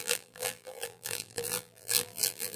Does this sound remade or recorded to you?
remade